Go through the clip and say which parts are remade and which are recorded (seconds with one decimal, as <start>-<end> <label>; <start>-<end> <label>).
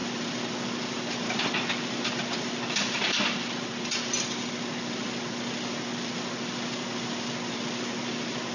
0.0-8.5 recorded